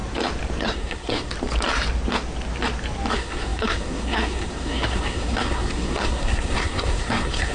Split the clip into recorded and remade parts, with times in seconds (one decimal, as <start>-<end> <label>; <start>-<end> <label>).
0.0-0.6 recorded; 0.6-1.3 remade; 1.3-3.1 recorded; 3.1-7.5 remade

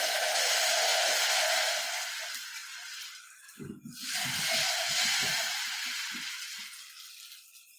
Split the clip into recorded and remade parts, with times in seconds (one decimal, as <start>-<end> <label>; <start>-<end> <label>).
0.0-7.8 recorded

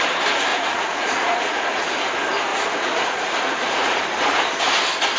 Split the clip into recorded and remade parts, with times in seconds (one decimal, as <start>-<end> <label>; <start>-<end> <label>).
0.0-0.5 recorded; 0.5-1.8 remade; 1.8-2.5 recorded; 2.5-4.0 remade; 4.0-5.2 recorded